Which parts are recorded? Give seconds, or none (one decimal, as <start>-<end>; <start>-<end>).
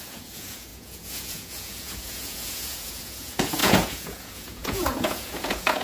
none